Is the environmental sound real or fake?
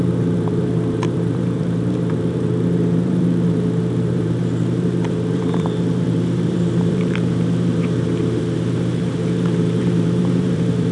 fake